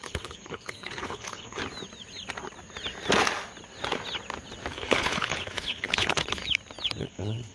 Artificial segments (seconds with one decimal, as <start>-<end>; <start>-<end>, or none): 0.0-1.6; 4.7-6.4; 7.0-7.5